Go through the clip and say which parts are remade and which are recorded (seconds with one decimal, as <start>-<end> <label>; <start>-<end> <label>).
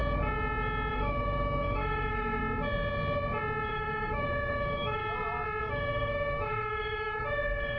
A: 0.0-0.9 recorded; 0.9-2.4 remade; 2.4-3.7 recorded; 3.7-5.0 remade; 5.0-5.7 recorded; 5.7-7.8 remade